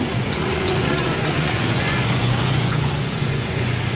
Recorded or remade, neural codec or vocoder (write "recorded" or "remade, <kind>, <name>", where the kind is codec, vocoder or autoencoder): remade, vocoder, Vocos